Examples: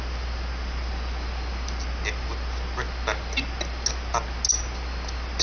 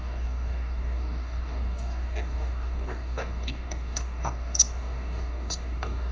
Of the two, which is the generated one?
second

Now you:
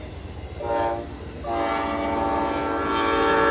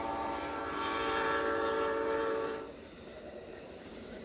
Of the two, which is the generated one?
second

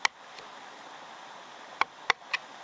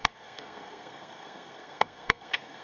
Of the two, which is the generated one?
second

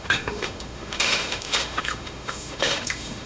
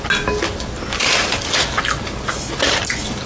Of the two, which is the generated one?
first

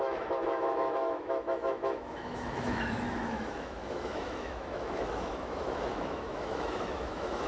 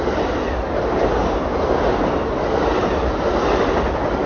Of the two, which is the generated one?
first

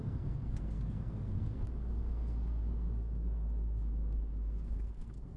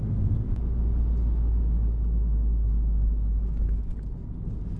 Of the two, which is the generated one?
first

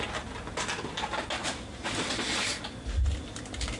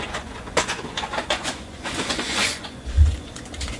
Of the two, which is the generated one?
second